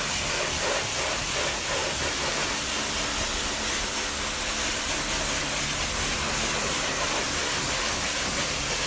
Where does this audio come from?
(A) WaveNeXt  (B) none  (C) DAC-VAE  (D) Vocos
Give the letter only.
B